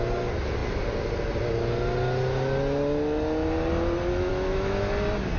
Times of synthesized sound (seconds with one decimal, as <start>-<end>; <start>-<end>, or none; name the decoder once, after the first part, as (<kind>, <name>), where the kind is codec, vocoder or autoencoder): 4.3-4.9 (autoencoder, DAC-VAE)